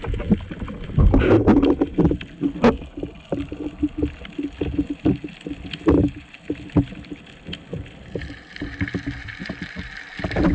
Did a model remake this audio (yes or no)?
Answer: no